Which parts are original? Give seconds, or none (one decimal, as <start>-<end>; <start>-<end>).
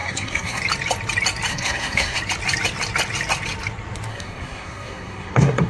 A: 0.6-1.5; 2.2-4.1